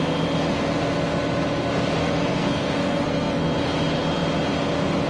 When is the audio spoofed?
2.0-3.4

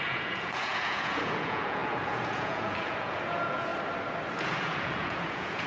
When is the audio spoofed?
0.0-3.7; 4.4-5.7

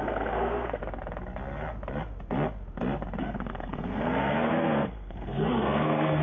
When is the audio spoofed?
0.0-0.8; 3.2-6.2